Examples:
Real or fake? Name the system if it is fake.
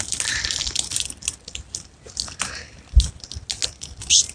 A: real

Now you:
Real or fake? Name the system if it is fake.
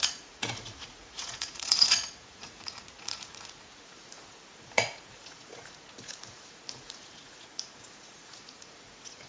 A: fake, vocoder, Vocos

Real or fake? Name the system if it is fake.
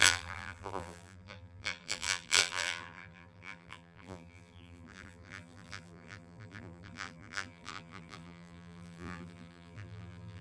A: fake, vocoder, BigVGAN v2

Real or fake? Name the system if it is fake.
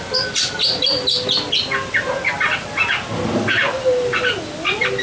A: real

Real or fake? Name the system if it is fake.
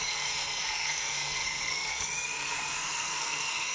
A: fake, codec, SNAC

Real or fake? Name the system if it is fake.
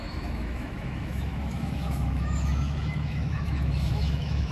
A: fake, autoencoder, DAC-VAE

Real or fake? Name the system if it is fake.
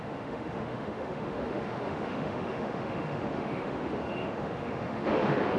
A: fake, autoencoder, DAC-VAE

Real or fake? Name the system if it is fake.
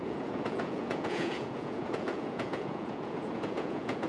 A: fake, vocoder, Vocos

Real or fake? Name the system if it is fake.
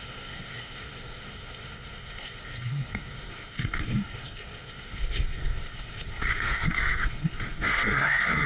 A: fake, codec, SNAC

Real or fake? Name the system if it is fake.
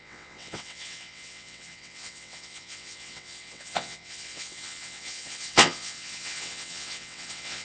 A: fake, vocoder, WaveNeXt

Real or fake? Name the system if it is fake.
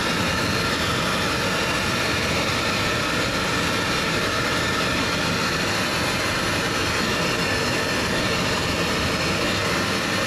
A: real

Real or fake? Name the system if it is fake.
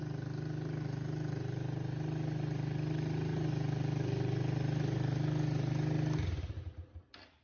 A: real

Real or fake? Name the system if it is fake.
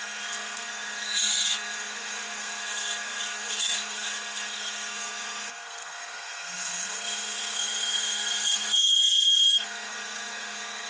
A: fake, codec, SNAC